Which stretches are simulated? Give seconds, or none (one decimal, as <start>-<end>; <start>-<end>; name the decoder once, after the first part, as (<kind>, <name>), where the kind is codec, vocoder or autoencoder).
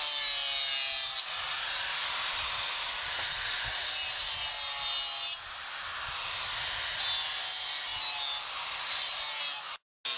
none